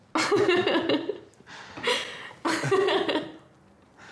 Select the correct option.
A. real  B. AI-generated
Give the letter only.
A